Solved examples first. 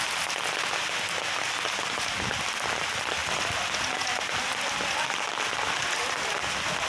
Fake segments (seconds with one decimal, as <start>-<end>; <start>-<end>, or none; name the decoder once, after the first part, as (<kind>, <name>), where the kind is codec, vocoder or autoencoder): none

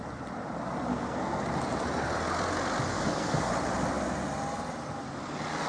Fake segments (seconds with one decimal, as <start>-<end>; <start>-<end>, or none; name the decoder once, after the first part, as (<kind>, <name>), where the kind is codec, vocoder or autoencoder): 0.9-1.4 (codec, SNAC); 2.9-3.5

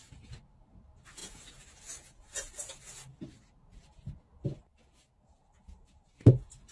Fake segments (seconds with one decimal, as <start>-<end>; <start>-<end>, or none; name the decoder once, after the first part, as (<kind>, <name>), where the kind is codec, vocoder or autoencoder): none

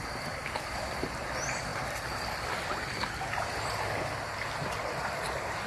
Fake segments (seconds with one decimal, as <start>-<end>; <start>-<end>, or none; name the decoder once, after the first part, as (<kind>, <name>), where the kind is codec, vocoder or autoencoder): none